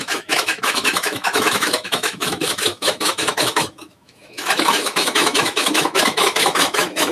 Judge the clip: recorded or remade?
remade